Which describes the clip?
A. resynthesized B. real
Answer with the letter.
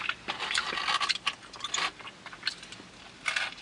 B